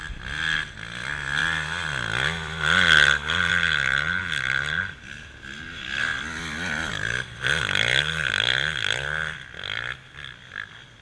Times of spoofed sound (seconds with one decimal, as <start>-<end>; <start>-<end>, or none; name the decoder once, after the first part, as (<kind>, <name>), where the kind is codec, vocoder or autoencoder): none